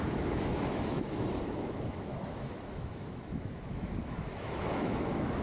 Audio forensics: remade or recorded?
remade